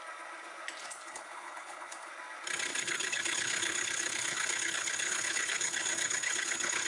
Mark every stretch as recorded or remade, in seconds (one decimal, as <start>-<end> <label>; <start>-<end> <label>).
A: 0.0-0.8 recorded; 0.8-2.1 remade; 2.1-2.7 recorded; 2.7-6.9 remade